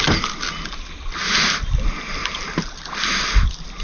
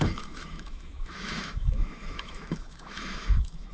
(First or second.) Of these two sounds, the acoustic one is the first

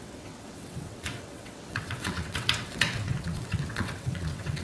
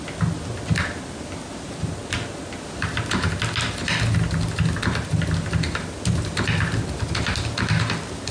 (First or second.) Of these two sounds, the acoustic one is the second